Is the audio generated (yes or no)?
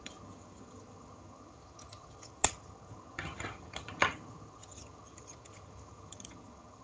yes